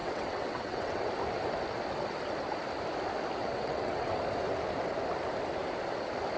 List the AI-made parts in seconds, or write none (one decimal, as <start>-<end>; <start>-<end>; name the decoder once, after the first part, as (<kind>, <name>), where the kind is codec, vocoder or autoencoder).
0.0-1.1 (vocoder, WaveNeXt); 3.4-4.2